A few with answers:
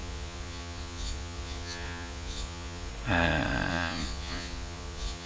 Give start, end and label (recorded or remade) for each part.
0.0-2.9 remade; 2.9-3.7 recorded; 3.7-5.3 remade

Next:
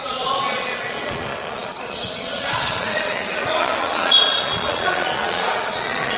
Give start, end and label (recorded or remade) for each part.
0.0-6.2 remade

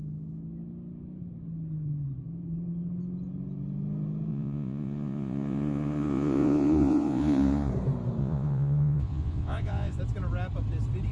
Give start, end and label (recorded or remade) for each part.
0.0-4.3 recorded; 4.3-7.7 remade; 7.7-8.2 recorded; 8.2-10.0 remade; 10.0-11.1 recorded

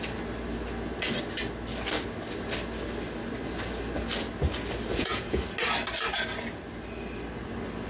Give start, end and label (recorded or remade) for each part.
0.0-4.9 recorded; 4.9-5.4 remade; 5.4-7.9 recorded

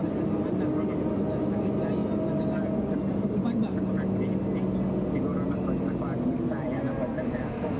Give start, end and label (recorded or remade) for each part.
0.0-7.8 recorded

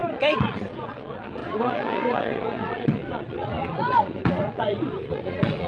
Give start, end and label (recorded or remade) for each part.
0.0-5.7 remade

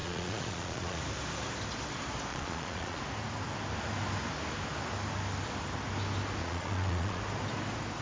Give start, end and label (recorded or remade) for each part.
0.0-1.0 remade; 1.0-2.3 recorded; 2.3-3.0 remade; 3.0-6.4 recorded; 6.4-7.2 remade; 7.2-8.0 recorded

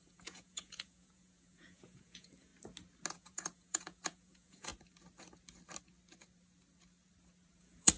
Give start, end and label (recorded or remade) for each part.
0.0-2.5 remade; 2.5-3.1 recorded; 3.1-4.7 remade; 4.7-7.6 recorded; 7.6-8.0 remade